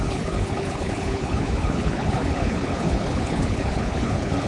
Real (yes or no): no